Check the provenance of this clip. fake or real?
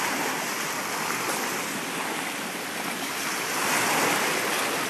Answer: real